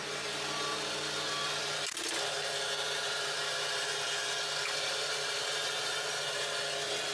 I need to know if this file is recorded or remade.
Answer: recorded